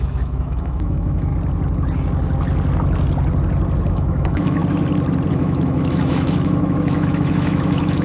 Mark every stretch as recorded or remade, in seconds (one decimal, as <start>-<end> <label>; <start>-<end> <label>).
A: 0.0-1.3 remade; 1.3-3.9 recorded; 3.9-4.6 remade; 4.6-5.3 recorded; 5.3-8.0 remade